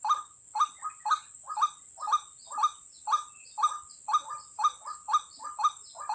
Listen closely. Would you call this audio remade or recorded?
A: recorded